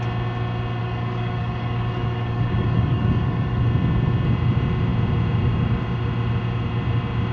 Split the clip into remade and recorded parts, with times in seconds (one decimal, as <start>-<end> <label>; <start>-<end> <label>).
0.0-0.8 recorded; 0.8-3.6 remade; 3.6-7.3 recorded